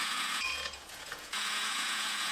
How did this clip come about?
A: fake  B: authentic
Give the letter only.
A